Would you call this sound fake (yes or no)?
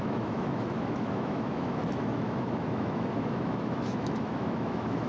yes